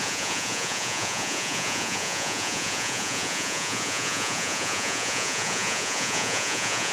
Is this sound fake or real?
fake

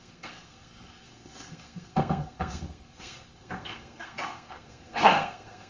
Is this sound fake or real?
fake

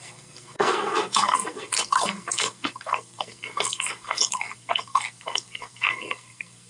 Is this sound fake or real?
fake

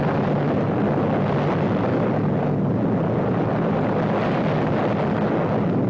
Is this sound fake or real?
real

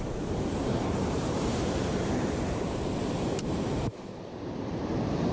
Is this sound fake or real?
fake